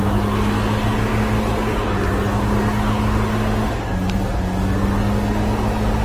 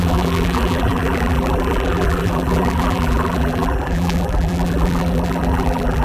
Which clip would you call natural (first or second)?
first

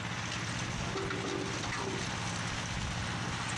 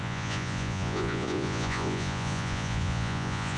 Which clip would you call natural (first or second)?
first